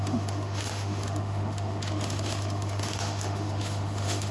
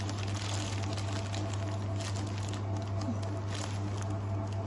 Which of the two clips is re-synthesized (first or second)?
first